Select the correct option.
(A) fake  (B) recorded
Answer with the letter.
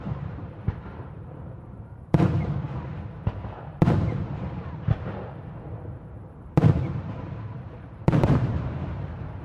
A